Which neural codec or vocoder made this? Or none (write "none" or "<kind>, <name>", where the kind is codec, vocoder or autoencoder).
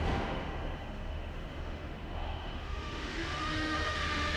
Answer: autoencoder, DAC-VAE